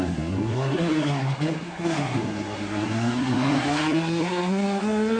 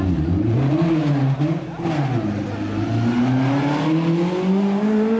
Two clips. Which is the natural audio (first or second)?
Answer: second